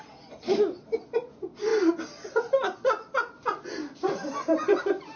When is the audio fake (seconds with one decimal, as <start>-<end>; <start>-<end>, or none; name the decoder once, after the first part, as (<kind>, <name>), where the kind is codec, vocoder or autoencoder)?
none